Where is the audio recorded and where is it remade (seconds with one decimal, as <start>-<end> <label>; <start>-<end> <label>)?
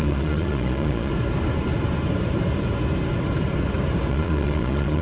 0.0-1.1 remade; 1.1-4.1 recorded; 4.1-5.0 remade